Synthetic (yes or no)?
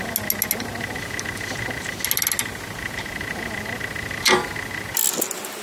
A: no